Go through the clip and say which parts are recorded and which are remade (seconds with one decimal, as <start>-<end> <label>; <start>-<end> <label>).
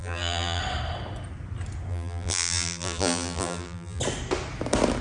0.0-0.6 remade; 0.6-1.9 recorded; 1.9-4.0 remade; 4.0-5.0 recorded